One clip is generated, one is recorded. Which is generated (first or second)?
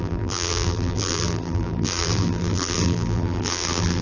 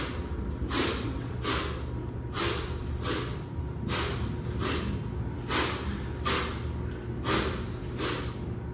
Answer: first